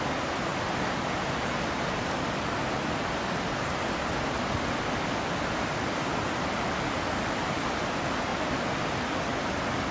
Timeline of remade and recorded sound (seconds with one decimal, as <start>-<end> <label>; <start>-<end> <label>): 0.0-9.9 recorded